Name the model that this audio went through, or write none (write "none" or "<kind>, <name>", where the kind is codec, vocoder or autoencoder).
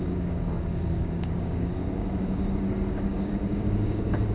codec, DAC